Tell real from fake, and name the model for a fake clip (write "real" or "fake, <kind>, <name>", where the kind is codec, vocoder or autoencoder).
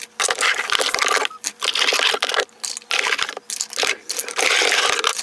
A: real